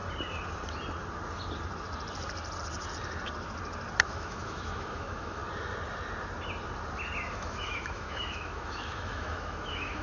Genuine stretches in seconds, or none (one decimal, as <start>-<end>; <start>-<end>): 0.0-4.1; 5.4-7.3